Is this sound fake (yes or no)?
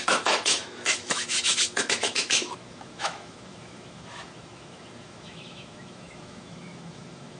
yes